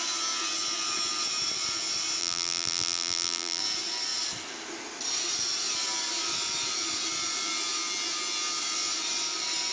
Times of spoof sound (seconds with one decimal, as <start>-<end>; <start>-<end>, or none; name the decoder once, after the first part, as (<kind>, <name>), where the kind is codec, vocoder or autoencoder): 2.2-3.6 (vocoder, BigVGAN v2)